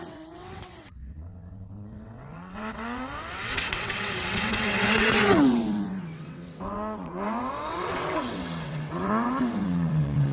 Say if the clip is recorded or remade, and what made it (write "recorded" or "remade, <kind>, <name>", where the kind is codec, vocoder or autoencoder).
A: remade, vocoder, WaveNeXt